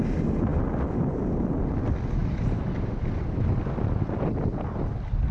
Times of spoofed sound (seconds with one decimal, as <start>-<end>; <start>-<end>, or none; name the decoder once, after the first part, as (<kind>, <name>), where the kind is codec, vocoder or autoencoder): none